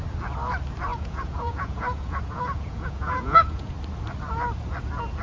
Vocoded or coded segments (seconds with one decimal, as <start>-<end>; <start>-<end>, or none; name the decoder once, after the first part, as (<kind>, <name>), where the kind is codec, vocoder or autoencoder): 0.9-3.7 (vocoder, Vocos)